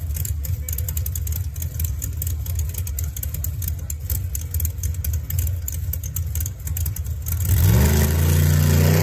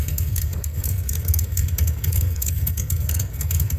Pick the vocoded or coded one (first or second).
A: second